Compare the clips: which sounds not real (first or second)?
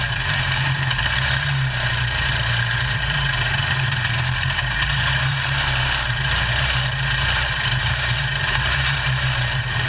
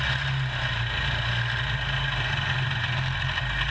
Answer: first